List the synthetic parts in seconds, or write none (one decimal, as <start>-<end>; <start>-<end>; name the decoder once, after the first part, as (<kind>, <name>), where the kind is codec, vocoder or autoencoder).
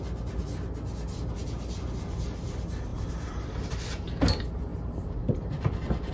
2.9-3.7 (vocoder, BigVGAN v2); 4.7-6.1